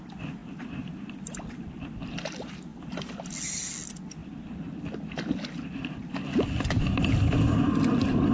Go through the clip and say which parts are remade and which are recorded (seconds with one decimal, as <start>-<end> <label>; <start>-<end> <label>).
0.0-0.4 recorded; 0.4-2.2 remade; 2.2-2.7 recorded; 2.7-3.2 remade; 3.2-4.2 recorded; 4.2-4.8 remade; 4.8-8.3 recorded